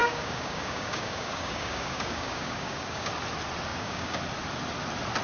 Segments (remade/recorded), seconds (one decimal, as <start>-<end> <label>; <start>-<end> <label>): 0.0-3.1 remade; 3.1-3.7 recorded; 3.7-4.2 remade; 4.2-5.2 recorded